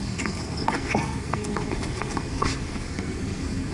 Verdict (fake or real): fake